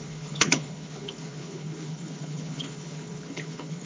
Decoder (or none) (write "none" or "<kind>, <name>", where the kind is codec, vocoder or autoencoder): codec, HILCodec